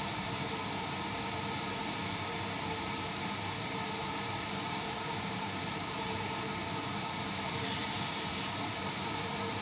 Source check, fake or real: fake